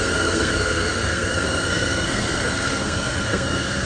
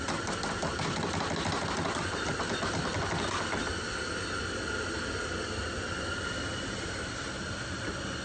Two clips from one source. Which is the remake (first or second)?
first